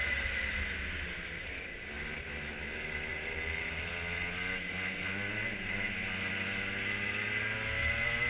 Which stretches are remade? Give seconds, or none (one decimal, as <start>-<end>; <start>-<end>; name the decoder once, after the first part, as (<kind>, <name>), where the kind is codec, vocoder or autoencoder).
0.0-0.7 (vocoder, BigVGAN v2); 3.1-3.9